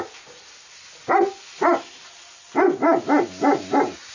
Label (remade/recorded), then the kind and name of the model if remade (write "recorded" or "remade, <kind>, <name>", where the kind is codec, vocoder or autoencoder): recorded